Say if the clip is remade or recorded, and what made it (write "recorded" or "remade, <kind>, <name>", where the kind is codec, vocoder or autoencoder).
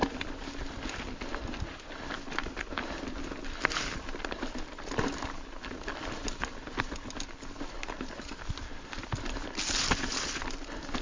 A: recorded